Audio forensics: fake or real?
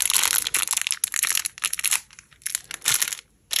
real